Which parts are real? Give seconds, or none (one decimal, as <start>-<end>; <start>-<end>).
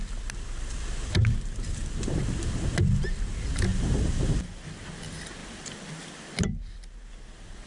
0.0-3.7; 4.6-7.7